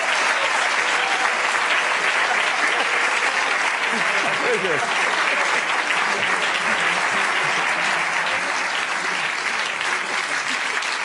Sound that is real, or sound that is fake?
real